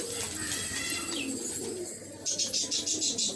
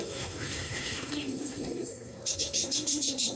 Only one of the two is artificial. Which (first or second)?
second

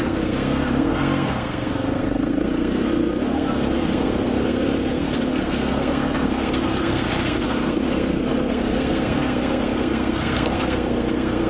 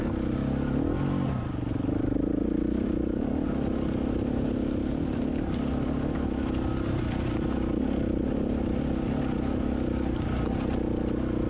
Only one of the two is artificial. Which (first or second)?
first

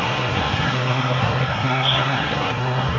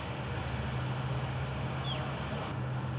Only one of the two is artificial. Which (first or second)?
first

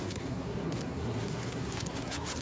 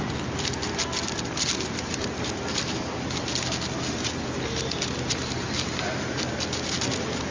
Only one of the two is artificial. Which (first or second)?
first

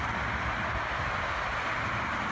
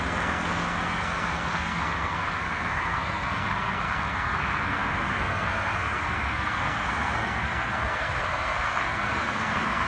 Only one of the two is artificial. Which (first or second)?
second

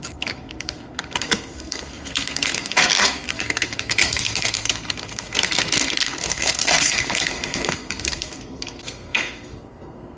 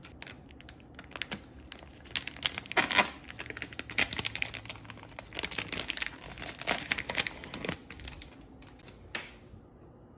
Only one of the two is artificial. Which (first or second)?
first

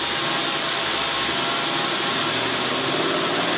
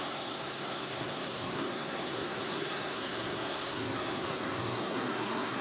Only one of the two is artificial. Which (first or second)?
second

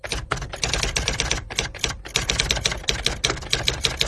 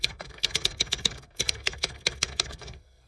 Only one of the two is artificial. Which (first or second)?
second